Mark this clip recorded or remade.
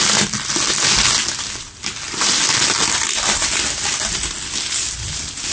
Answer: recorded